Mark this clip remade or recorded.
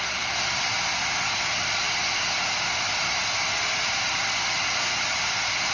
recorded